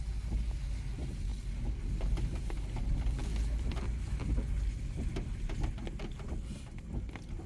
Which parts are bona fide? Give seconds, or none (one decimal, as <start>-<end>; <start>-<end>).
0.0-7.5